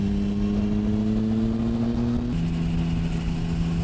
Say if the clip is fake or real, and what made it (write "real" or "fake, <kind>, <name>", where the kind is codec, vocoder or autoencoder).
real